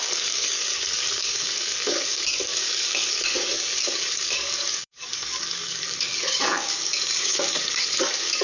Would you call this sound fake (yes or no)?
yes